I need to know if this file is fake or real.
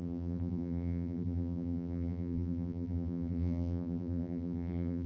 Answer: fake